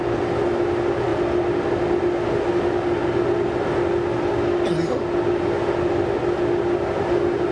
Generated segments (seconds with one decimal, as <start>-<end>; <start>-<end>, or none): none